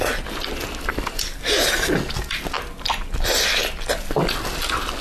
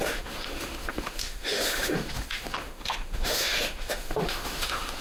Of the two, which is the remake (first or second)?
second